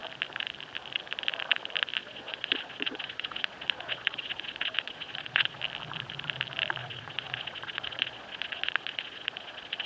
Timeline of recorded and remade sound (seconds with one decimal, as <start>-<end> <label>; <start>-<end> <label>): 0.0-2.0 recorded; 2.0-5.6 remade; 5.6-6.8 recorded; 6.8-9.9 remade